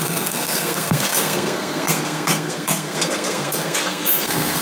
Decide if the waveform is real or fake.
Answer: fake